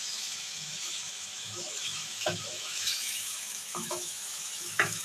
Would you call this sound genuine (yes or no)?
no